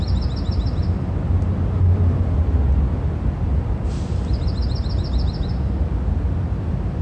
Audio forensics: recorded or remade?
recorded